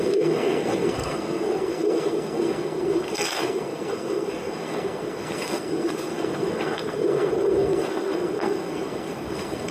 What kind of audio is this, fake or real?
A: fake